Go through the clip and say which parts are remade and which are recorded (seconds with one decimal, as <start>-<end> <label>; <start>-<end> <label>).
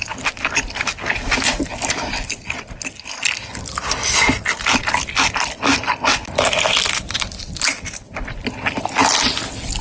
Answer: 0.0-9.8 recorded